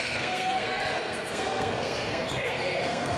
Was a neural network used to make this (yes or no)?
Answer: yes